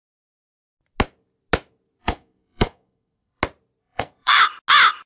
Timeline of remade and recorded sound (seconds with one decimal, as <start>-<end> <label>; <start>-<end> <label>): 0.0-2.0 recorded; 2.0-3.4 remade; 3.4-3.8 recorded; 3.8-4.4 remade; 4.4-5.1 recorded